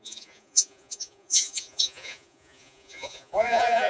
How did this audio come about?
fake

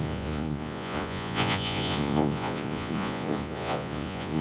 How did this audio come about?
fake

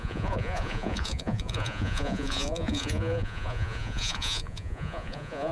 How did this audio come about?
fake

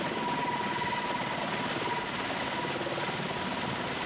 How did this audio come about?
real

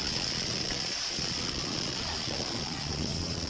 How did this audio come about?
fake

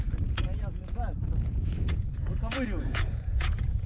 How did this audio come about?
fake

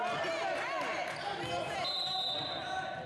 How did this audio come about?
real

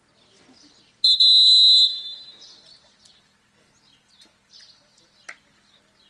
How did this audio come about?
real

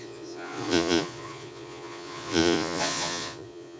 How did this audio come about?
fake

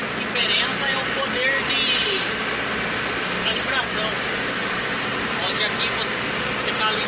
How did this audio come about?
real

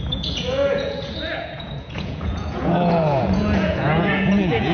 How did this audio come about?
fake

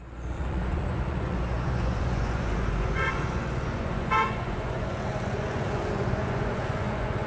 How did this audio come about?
fake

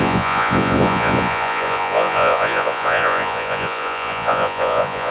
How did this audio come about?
fake